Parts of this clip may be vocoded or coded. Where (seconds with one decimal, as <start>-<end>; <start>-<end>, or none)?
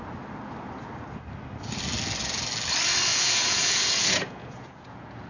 3.1-5.3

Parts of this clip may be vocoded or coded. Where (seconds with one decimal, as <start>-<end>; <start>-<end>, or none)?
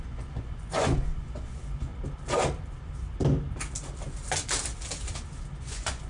0.0-1.9; 5.6-6.1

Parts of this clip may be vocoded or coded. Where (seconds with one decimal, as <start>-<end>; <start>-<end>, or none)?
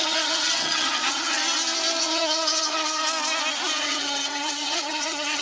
0.0-1.4; 2.0-3.0; 3.8-5.4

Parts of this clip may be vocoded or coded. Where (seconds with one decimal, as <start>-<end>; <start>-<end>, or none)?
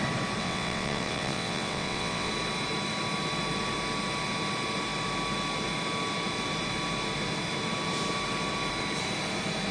0.4-2.3